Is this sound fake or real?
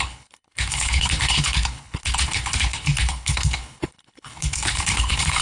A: fake